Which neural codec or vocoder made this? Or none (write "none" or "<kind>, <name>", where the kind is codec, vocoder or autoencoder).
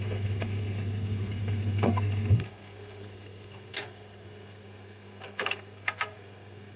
codec, SNAC